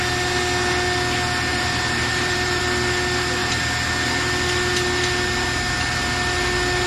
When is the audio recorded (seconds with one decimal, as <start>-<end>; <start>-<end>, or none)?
0.0-1.5; 2.6-6.9